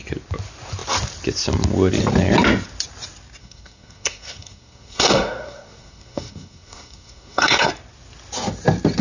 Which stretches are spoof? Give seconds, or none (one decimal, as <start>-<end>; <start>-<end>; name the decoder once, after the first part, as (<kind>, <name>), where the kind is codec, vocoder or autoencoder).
3.4-7.7 (codec, SNAC)